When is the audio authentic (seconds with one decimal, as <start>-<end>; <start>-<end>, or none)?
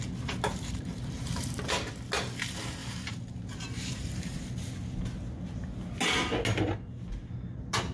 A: 0.0-0.5; 2.0-2.8; 4.5-7.9